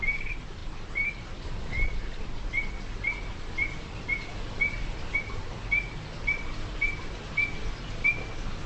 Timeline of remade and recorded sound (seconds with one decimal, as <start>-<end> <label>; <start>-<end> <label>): 0.0-8.7 recorded